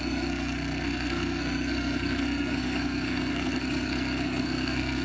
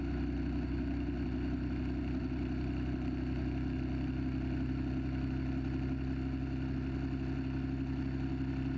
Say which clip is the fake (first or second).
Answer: first